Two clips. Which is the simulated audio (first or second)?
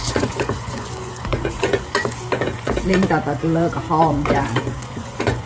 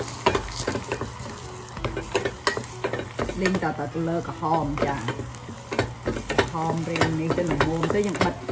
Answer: first